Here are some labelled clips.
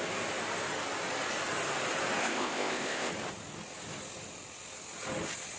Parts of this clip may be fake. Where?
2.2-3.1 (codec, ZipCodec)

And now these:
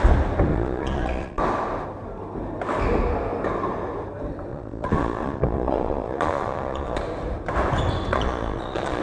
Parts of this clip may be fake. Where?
0.5-1.4 (vocoder, Vocos); 4.5-7.0; 8.1-9.0

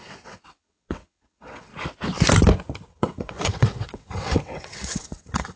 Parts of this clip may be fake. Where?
0.0-1.7 (vocoder, WaveNeXt); 2.9-5.6

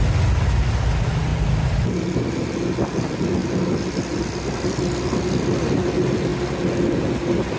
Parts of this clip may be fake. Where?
none

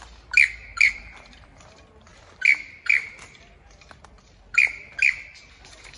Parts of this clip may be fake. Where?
0.7-1.6 (vocoder, BigVGAN v2)